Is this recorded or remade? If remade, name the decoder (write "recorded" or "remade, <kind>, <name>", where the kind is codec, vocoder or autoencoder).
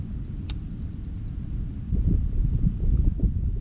recorded